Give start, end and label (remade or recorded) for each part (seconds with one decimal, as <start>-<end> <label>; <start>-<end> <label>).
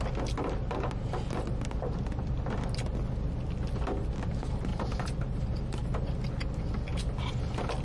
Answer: 0.0-4.7 recorded; 4.7-6.1 remade; 6.1-7.8 recorded